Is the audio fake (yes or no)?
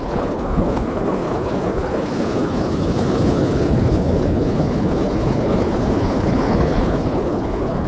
yes